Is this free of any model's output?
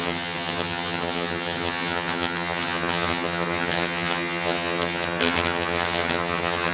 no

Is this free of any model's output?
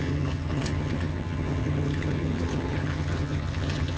no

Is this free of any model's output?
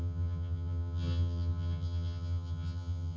no